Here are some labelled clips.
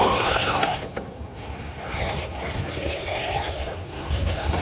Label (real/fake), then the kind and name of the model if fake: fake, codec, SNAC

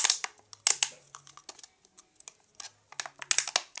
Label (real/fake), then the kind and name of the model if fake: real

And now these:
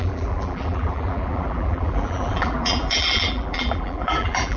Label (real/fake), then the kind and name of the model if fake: fake, vocoder, BigVGAN v2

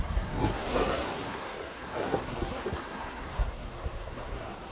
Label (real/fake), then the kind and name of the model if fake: fake, codec, SNAC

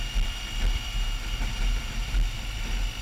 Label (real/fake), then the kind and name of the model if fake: real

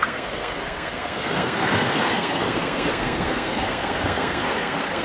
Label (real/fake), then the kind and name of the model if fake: fake, codec, SNAC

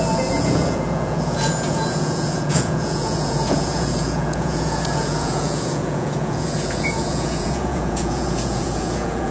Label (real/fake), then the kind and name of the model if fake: fake, vocoder, Vocos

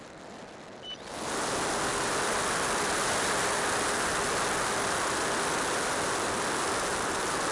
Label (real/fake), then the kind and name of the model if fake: real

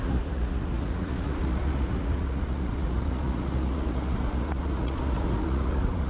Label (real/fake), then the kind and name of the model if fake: fake, vocoder, Vocos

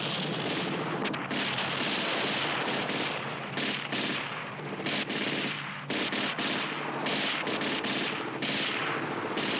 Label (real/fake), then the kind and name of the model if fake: real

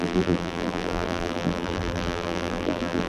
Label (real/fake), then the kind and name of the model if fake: fake, vocoder, BigVGAN v2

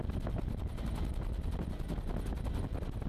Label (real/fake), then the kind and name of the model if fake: real